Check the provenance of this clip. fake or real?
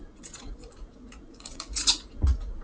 fake